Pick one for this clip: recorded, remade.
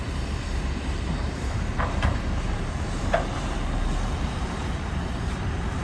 remade